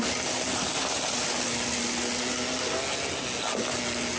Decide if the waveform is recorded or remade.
recorded